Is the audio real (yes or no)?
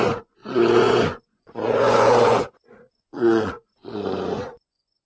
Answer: no